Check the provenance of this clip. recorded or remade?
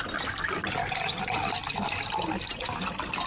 recorded